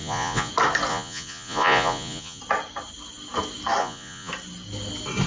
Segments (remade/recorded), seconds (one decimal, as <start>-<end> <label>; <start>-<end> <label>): 0.0-0.5 remade; 0.5-0.9 recorded; 0.9-2.4 remade; 2.4-3.8 recorded; 3.8-4.3 remade; 4.3-5.3 recorded